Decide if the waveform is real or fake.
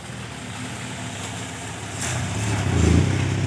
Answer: real